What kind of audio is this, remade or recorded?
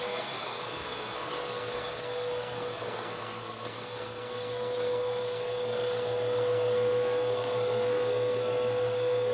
remade